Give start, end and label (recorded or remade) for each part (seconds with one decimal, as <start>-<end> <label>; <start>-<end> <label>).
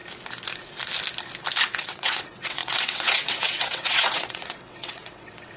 0.0-1.6 recorded; 1.6-5.6 remade